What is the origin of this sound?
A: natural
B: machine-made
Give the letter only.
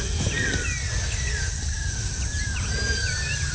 A